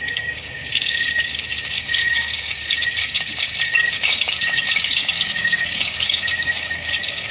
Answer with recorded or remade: remade